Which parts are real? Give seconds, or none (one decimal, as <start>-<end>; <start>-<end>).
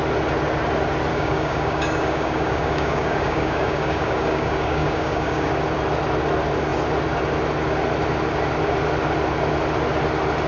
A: 0.0-1.1; 5.5-10.5